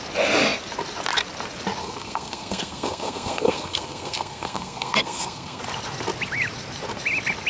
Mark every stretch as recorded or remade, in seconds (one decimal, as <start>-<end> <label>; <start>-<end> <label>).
0.0-1.8 recorded; 1.8-5.6 remade; 5.6-7.5 recorded